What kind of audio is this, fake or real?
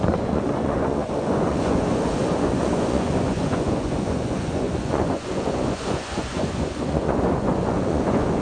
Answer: fake